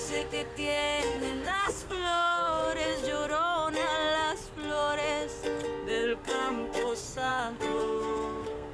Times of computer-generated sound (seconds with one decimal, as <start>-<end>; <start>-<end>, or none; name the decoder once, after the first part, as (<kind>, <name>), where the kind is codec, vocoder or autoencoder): 0.0-2.6 (codec, SNAC); 5.9-8.7